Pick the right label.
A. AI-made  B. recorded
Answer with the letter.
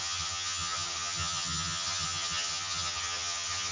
A